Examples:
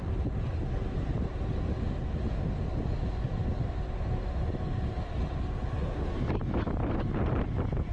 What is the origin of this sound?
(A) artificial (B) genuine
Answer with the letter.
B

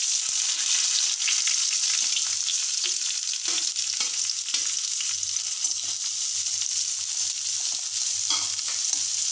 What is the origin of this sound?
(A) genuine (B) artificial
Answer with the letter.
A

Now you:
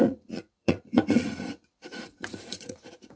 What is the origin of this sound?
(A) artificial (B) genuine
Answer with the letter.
A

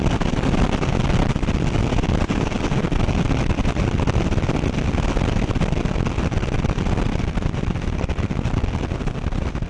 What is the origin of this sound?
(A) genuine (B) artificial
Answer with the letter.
A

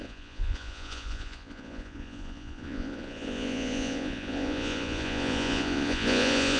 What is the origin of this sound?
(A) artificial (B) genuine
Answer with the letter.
A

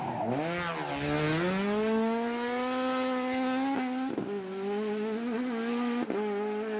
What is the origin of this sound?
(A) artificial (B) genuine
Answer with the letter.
B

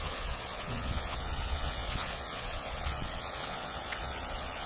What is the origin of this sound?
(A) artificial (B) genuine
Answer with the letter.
A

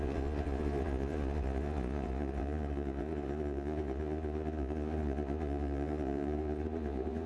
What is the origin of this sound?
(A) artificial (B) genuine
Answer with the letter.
A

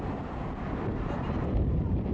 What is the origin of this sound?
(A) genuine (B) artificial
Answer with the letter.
A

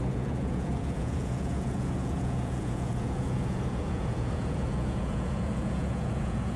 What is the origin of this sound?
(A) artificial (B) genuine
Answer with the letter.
A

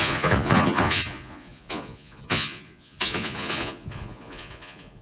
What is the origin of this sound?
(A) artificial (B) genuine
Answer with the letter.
A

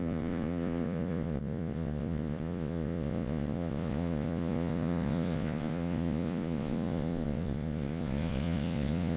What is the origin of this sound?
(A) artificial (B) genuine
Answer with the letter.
A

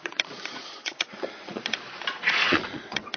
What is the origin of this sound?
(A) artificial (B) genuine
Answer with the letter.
A